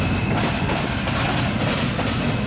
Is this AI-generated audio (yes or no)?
no